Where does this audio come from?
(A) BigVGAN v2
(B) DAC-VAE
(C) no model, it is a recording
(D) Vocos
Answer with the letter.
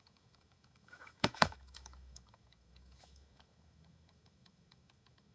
B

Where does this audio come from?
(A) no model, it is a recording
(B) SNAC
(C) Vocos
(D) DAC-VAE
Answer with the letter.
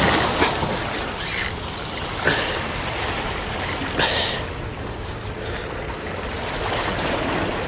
A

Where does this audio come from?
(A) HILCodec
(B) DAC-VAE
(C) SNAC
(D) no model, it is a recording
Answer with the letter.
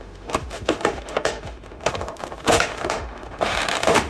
B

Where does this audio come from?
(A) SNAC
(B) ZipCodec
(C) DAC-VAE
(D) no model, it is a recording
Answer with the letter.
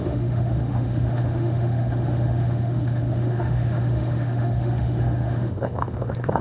C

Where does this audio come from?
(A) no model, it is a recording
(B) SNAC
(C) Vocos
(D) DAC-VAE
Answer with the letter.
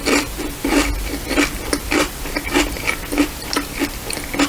A